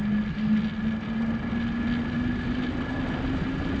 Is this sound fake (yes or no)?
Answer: no